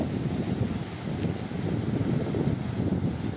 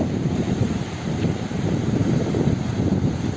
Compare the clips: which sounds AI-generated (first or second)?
second